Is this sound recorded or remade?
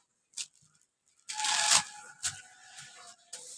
recorded